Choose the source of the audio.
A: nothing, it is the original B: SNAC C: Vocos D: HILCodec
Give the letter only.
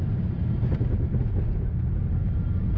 A